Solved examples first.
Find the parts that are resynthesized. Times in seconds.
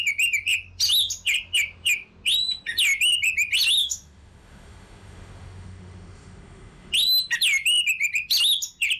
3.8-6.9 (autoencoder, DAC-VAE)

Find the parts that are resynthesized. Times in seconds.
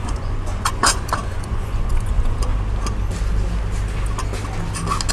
0.0-2.5 (vocoder, Vocos)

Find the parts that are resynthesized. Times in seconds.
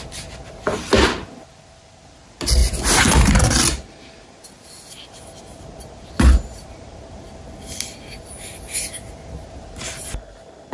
none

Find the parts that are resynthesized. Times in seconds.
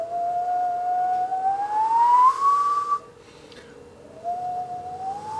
none